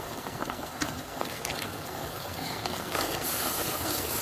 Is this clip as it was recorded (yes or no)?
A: no